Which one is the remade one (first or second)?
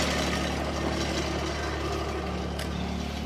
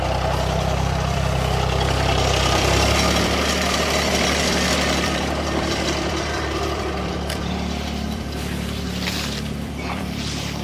second